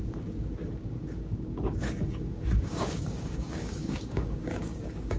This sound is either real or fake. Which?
fake